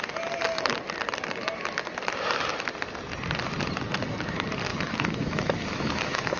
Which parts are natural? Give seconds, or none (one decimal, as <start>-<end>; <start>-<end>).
0.0-4.7